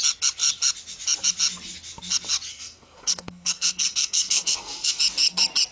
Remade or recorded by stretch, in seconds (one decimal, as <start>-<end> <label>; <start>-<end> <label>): 0.0-2.5 recorded; 2.5-5.0 remade; 5.0-5.7 recorded